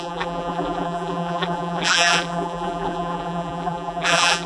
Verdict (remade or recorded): remade